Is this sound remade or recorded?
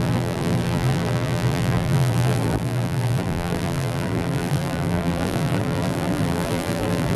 remade